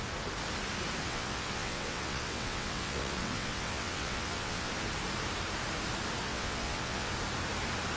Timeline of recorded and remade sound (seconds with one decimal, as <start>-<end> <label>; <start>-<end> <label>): 0.0-1.0 recorded; 1.0-4.7 remade; 4.7-6.2 recorded; 6.2-7.1 remade; 7.1-8.0 recorded